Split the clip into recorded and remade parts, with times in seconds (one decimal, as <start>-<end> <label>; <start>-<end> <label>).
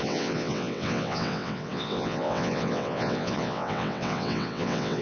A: 0.0-5.0 remade